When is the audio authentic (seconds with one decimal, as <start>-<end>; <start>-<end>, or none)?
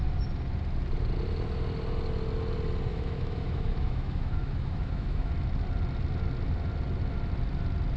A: 0.0-2.9; 5.3-8.0